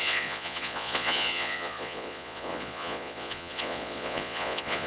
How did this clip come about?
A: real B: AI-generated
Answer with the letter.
B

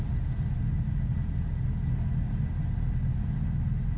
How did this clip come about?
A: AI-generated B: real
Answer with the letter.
B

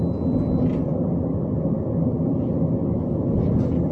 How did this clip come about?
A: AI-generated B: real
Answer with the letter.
B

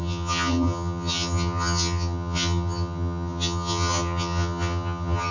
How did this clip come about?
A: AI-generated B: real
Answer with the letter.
A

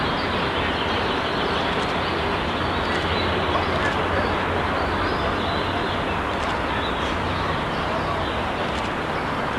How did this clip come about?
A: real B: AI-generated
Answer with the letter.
A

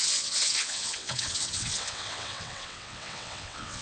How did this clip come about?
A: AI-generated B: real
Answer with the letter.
A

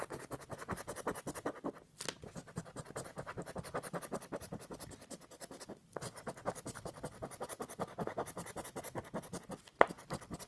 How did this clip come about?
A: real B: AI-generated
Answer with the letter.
A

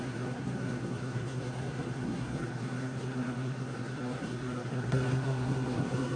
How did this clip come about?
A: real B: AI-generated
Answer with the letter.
B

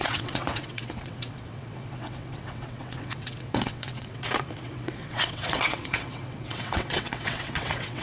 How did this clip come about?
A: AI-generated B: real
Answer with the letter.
A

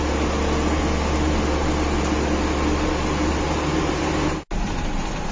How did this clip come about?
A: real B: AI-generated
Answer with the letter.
A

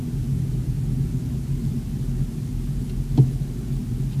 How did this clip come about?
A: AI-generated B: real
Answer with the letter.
B